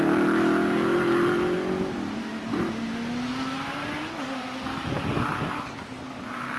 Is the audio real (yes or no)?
yes